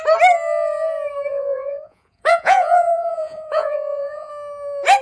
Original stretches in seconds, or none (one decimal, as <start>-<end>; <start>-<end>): 0.0-1.3; 4.3-5.0